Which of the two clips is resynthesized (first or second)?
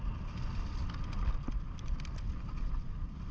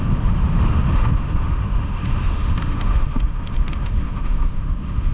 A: second